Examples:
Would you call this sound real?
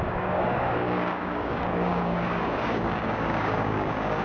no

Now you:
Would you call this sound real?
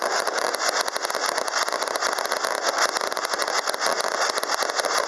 yes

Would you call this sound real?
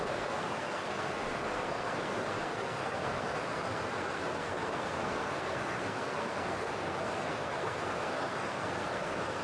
no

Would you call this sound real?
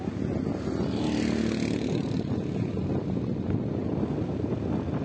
yes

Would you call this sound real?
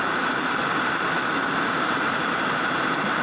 no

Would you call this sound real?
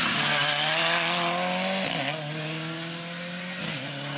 yes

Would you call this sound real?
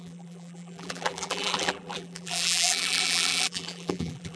no